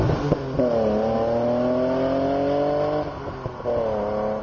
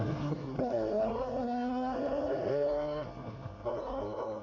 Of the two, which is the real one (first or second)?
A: first